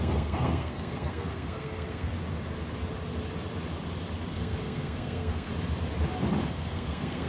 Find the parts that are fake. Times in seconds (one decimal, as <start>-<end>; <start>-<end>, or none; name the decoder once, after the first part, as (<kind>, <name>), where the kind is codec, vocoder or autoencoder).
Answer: 0.0-2.1 (codec, SNAC); 4.3-5.5; 6.5-7.3